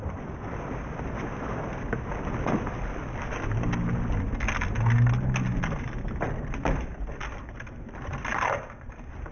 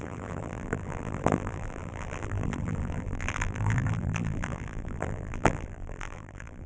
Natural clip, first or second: first